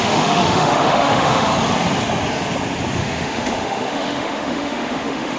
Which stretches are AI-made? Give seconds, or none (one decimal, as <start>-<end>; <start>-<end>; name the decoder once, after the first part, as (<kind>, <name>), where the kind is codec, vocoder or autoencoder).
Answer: 0.0-1.5 (autoencoder, DAC-VAE); 3.0-5.4